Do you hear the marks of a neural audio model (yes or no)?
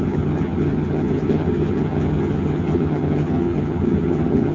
yes